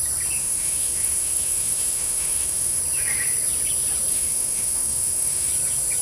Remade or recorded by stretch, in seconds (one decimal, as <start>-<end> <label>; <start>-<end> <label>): 0.0-0.4 recorded; 0.4-2.8 remade; 2.8-4.1 recorded; 4.1-5.5 remade; 5.5-6.0 recorded